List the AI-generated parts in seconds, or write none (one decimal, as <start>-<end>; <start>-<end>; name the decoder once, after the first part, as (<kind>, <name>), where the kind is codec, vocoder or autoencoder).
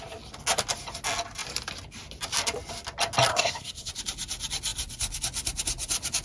3.3-3.9 (codec, SNAC)